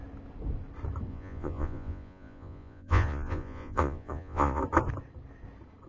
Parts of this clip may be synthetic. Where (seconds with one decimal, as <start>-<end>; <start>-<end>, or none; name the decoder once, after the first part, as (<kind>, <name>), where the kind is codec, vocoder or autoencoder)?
1.1-4.6 (vocoder, Vocos)